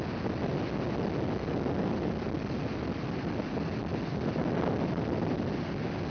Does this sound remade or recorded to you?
recorded